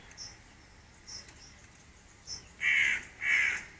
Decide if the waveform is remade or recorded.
recorded